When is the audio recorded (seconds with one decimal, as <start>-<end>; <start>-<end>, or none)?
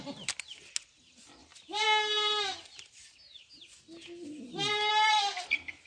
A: 0.0-5.9